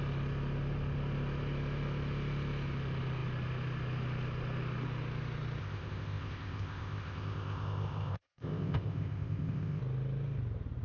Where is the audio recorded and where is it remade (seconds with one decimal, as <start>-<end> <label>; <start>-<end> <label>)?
0.0-5.6 recorded; 5.6-9.8 remade; 9.8-10.8 recorded